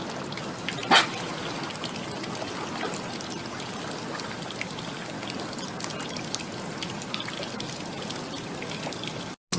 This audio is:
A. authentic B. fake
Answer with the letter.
A